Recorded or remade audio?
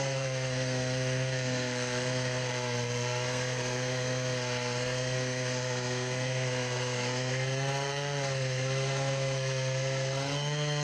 remade